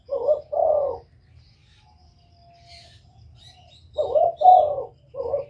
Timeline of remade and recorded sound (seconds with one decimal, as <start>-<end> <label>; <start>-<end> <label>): 0.0-5.5 recorded